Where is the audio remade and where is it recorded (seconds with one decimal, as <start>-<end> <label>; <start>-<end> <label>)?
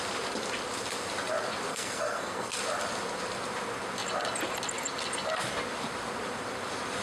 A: 0.0-1.7 recorded; 1.7-2.6 remade; 2.6-7.0 recorded